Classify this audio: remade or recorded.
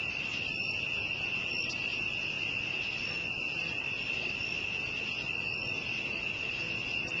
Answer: recorded